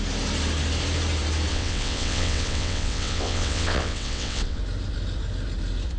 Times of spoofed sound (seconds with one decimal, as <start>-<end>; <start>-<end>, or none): 1.5-4.6